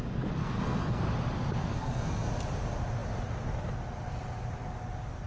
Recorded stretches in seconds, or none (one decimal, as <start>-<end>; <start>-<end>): 0.0-0.4; 1.0-1.7; 2.3-5.3

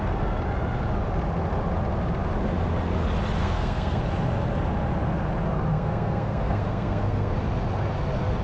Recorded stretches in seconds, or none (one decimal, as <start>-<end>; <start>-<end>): 0.0-3.4; 4.0-5.7; 7.3-8.4

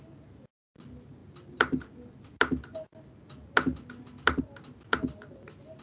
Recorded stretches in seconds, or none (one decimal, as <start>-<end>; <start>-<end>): 0.0-5.8

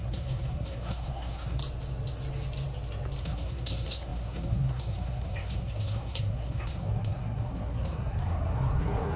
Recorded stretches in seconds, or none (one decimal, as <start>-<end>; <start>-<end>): 1.6-3.2

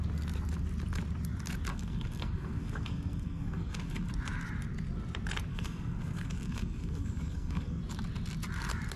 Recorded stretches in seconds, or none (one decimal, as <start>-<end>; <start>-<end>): 0.0-1.7; 4.1-5.5; 7.8-9.0

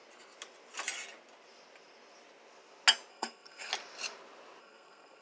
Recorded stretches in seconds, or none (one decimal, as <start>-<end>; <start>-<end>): 0.0-3.1; 3.7-4.6

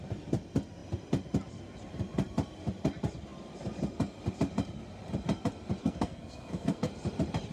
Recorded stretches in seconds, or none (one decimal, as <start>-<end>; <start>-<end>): 0.0-5.8; 6.9-7.5